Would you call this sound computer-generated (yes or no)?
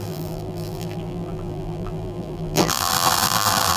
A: yes